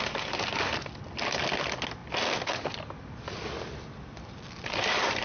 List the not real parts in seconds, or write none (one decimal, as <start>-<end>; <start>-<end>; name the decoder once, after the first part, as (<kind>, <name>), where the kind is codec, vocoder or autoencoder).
none